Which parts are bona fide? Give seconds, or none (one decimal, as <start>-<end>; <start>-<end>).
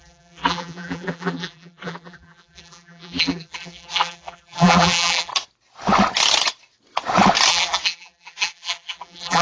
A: 5.3-7.5